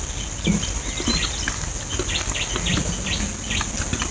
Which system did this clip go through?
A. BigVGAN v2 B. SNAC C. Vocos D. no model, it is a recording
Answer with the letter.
D